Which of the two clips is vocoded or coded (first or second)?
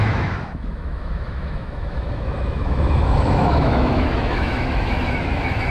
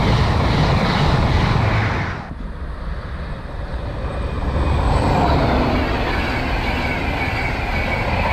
first